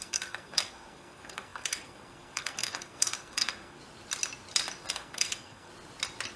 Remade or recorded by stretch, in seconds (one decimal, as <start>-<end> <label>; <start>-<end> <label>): 0.0-3.8 remade; 3.8-4.9 recorded; 4.9-5.7 remade; 5.7-6.4 recorded

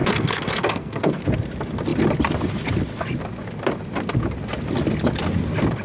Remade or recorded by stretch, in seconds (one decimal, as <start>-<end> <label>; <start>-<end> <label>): 0.0-1.2 remade; 1.2-5.8 recorded

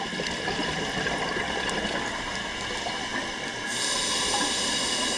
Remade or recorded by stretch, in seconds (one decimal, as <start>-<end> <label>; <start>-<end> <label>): 0.0-5.2 recorded

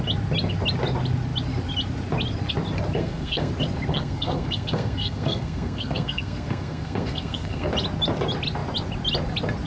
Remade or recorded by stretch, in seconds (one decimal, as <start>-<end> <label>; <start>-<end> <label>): 0.0-3.0 recorded; 3.0-3.5 remade; 3.5-3.9 recorded; 3.9-7.7 remade; 7.7-9.7 recorded

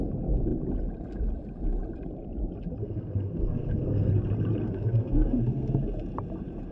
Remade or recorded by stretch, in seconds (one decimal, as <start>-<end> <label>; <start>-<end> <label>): 0.0-2.8 recorded; 2.8-4.1 remade; 4.1-4.6 recorded; 4.6-5.8 remade; 5.8-6.7 recorded

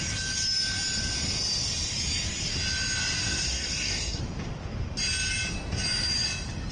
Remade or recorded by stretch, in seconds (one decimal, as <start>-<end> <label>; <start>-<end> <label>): 0.0-3.2 recorded; 3.2-4.2 remade; 4.2-6.7 recorded

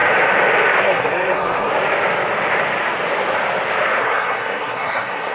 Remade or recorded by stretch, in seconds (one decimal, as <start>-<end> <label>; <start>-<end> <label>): 0.0-0.8 recorded; 0.8-1.7 remade; 1.7-4.0 recorded; 4.0-5.3 remade

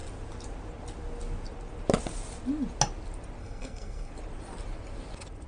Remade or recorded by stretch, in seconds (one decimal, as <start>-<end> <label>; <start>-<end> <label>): 0.0-3.4 recorded; 3.4-4.1 remade; 4.1-5.5 recorded